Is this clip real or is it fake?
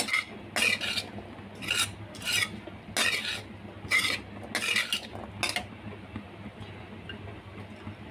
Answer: real